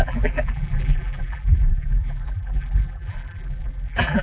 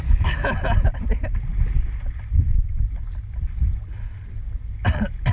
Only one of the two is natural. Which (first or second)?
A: second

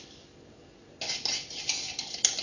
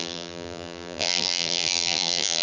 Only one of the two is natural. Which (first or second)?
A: first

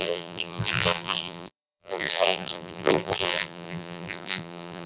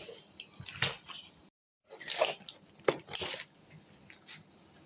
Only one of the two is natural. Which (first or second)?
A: second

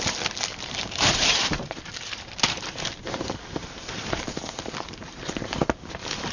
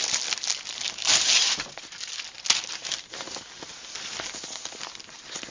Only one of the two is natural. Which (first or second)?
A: second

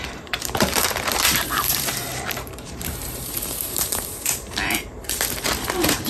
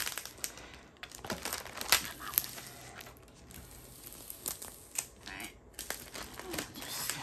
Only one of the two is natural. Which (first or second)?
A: second